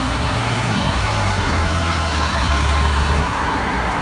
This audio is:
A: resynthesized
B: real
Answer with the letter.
A